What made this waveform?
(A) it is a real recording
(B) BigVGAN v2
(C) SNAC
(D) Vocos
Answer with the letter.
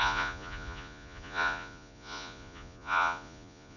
D